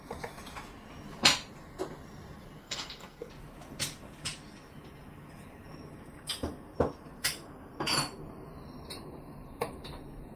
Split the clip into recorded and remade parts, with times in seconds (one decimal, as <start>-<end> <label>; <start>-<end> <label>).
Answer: 0.0-2.6 recorded; 2.6-3.3 remade; 3.3-10.4 recorded